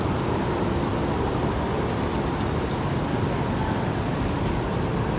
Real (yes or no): yes